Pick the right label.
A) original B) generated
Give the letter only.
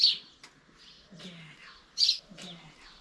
A